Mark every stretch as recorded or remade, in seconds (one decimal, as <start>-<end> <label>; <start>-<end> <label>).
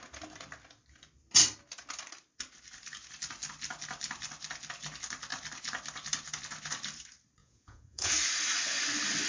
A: 0.0-7.4 recorded; 7.4-8.1 remade; 8.1-9.3 recorded